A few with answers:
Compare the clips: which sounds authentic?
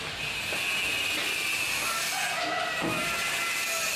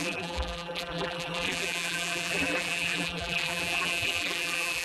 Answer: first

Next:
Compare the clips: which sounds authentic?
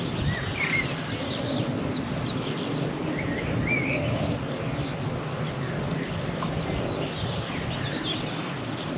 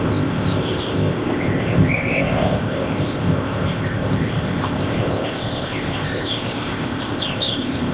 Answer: first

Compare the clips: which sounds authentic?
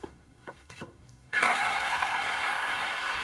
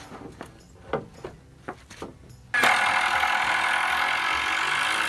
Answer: second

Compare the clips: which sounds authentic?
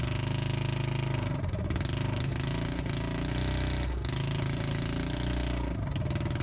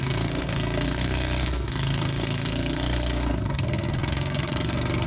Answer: first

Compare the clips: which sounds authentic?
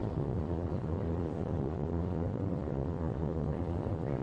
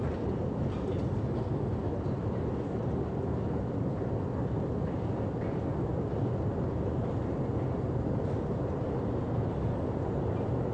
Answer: second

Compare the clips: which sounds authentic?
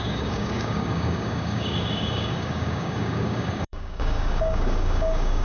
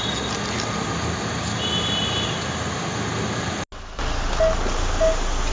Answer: second